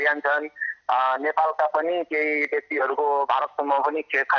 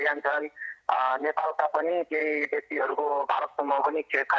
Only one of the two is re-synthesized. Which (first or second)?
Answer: second